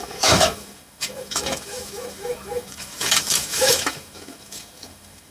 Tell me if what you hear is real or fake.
fake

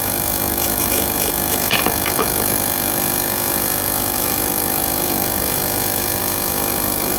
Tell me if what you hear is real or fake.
fake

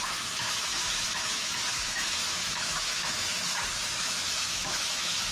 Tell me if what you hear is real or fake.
fake